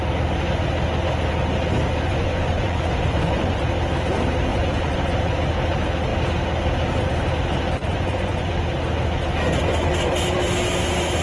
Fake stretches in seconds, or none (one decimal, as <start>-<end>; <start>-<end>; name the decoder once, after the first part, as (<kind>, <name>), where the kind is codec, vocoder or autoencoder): 2.1-3.6 (vocoder, Vocos); 4.5-5.0; 7.9-8.5

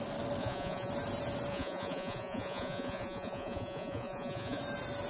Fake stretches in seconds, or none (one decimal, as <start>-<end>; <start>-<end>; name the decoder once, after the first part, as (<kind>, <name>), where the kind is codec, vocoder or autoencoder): 0.4-0.9 (vocoder, Vocos); 1.5-4.6